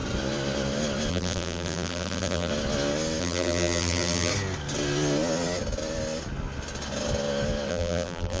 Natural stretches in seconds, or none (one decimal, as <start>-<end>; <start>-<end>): 0.0-1.1; 2.5-3.2; 4.3-7.7